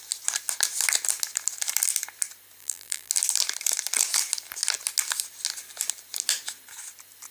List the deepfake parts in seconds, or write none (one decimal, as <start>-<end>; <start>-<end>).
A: 2.6-3.1